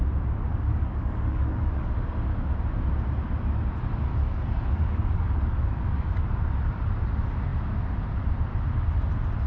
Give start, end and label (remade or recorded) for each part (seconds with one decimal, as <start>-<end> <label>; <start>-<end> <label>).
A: 0.0-0.5 recorded; 0.5-1.9 remade; 1.9-4.1 recorded; 4.1-6.1 remade; 6.1-9.5 recorded